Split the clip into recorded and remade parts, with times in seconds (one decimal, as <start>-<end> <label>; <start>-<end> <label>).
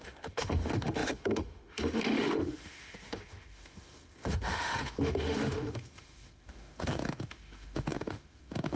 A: 0.0-8.8 remade